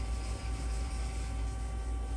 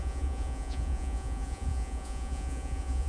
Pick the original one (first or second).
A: first